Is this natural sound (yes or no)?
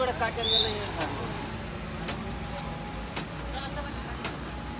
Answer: yes